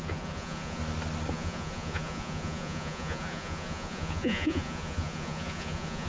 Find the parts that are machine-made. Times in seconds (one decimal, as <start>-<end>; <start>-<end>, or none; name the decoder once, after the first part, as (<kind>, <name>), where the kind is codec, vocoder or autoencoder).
0.0-0.8 (vocoder, Vocos); 1.3-6.1